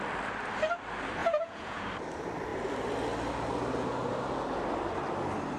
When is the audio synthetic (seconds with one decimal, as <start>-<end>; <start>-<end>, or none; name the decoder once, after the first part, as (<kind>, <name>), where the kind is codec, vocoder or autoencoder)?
1.2-1.8 (vocoder, Vocos)